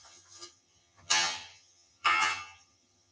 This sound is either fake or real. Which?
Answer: fake